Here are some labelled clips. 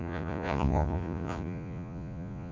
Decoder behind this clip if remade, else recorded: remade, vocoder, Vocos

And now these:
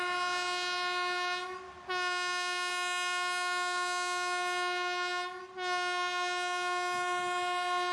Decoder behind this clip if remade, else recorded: recorded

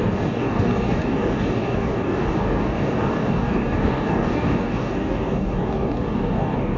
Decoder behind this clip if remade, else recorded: remade, codec, DAC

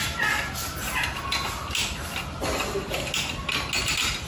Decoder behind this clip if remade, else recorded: recorded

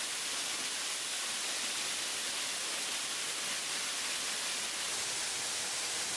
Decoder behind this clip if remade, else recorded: recorded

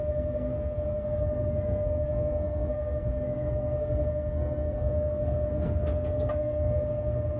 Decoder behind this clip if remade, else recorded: remade, codec, SNAC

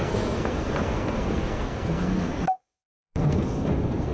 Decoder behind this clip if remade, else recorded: remade, codec, SNAC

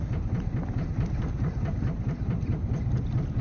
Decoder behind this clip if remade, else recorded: remade, vocoder, BigVGAN v2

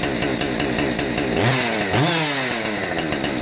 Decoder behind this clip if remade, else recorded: recorded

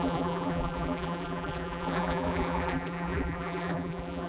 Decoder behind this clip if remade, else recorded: remade, vocoder, BigVGAN v2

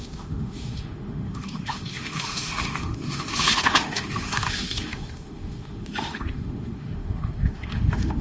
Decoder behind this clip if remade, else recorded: remade, autoencoder, DAC-VAE